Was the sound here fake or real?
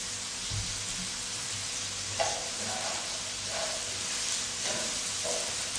real